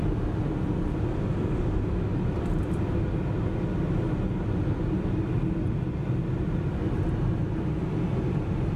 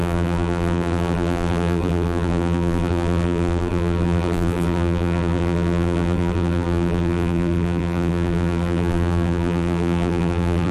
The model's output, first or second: second